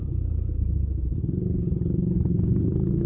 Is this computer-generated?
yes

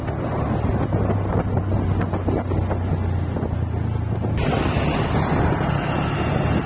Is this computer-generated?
no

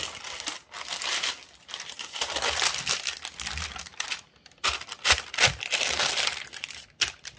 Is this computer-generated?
no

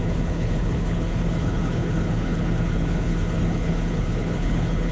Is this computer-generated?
yes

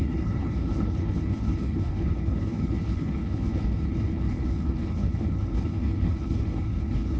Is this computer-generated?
yes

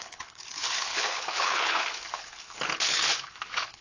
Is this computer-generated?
yes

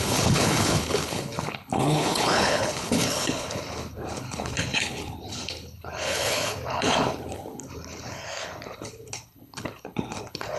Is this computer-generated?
yes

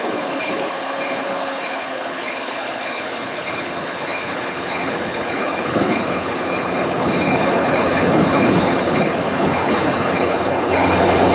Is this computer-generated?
yes